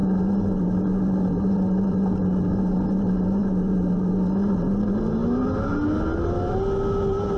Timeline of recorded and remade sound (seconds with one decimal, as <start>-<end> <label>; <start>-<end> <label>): 0.0-4.1 remade; 4.1-7.4 recorded